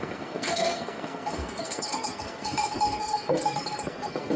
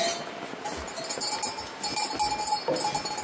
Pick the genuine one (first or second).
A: second